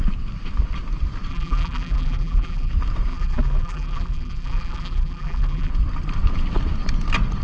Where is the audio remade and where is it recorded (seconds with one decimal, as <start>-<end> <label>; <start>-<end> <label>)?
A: 0.0-1.3 recorded; 1.3-2.7 remade; 2.7-3.1 recorded; 3.1-5.7 remade; 5.7-7.4 recorded